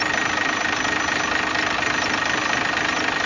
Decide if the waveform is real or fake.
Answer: real